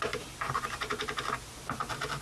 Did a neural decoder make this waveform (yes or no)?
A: no